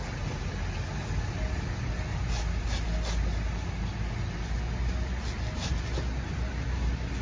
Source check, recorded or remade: recorded